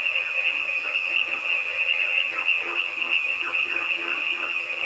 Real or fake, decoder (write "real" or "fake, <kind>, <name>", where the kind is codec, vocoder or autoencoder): fake, vocoder, HiFi-GAN